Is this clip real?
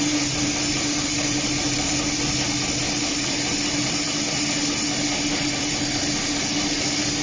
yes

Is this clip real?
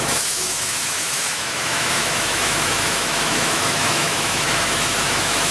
no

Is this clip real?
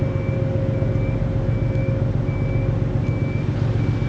yes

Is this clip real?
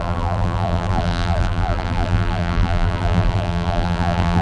no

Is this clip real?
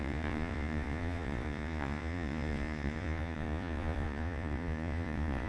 no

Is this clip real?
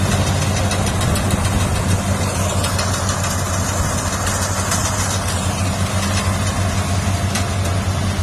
yes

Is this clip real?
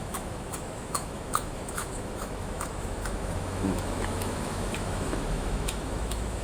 no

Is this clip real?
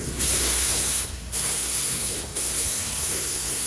no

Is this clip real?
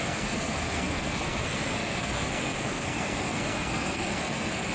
no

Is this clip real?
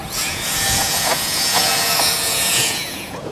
no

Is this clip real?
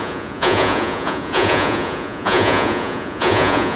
no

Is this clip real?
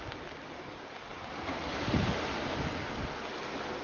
yes